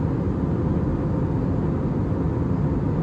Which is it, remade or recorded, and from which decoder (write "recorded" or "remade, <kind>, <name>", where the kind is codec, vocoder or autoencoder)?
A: recorded